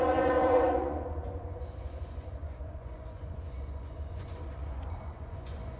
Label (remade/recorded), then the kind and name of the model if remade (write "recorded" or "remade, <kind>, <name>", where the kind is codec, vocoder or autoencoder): remade, vocoder, Vocos